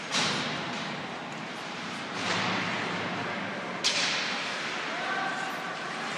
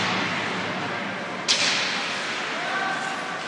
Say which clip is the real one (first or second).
second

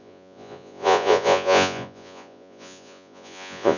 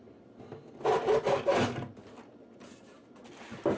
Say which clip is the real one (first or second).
second